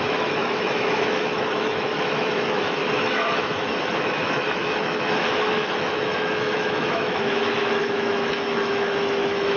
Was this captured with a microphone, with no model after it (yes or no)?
no